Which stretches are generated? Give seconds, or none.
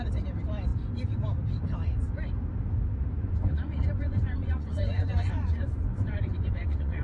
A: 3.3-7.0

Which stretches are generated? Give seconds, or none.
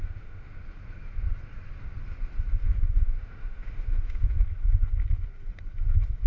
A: 0.0-0.5; 2.6-4.4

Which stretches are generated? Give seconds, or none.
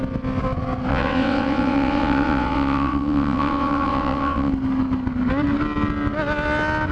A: 0.9-4.5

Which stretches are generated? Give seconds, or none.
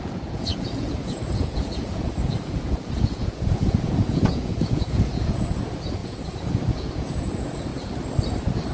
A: 0.0-7.7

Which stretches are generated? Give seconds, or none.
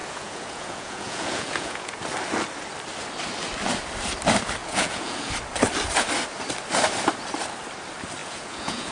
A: 0.0-2.0; 4.6-5.3; 8.2-8.9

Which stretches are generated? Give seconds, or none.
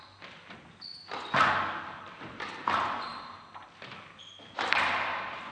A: none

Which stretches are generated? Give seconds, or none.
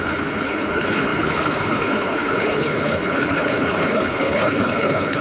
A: 0.0-5.2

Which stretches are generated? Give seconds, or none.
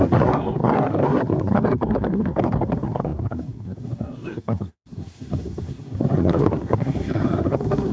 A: 0.0-7.9